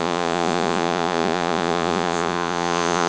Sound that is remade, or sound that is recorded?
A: remade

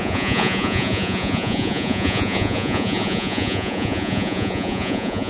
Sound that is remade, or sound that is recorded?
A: remade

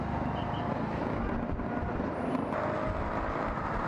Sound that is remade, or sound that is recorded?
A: recorded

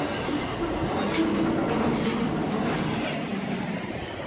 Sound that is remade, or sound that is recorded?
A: recorded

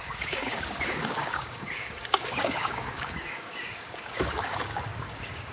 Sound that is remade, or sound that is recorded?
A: remade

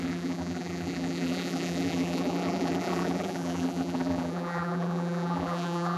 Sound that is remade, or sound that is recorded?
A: remade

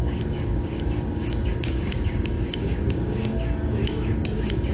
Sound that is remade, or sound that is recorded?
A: remade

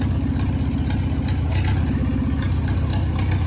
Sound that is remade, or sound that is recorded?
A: recorded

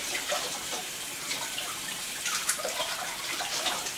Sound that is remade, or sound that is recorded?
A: remade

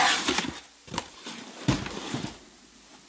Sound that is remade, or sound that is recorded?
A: recorded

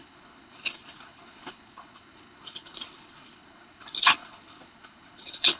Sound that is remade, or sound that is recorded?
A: remade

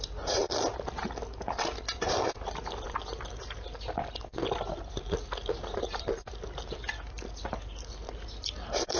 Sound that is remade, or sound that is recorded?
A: recorded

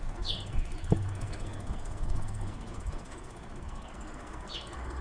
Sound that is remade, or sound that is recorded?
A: remade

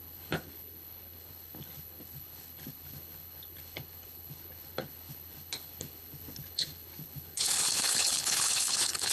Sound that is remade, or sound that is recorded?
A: remade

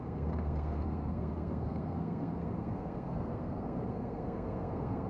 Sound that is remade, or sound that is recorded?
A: remade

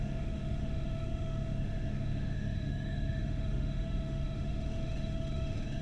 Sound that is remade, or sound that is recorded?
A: remade